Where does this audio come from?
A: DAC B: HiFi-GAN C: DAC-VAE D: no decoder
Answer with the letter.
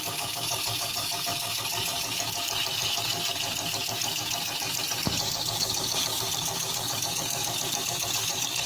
A